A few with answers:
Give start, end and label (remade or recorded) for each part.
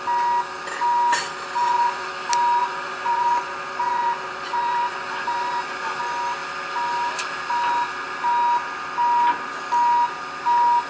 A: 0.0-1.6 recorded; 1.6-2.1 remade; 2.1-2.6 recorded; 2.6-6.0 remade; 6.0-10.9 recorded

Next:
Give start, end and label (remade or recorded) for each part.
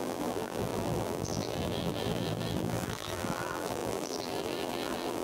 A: 0.0-5.2 remade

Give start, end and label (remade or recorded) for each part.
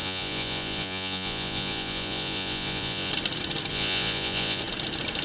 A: 0.0-3.1 remade; 3.1-3.7 recorded; 3.7-4.6 remade; 4.6-5.2 recorded